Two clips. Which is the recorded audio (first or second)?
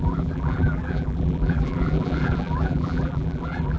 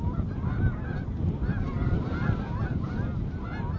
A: second